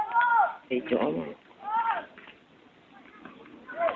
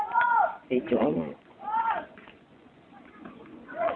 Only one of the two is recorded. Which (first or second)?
first